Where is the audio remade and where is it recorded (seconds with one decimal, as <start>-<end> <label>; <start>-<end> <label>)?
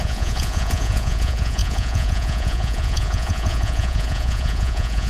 0.0-5.1 remade